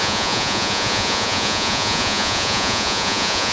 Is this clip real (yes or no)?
no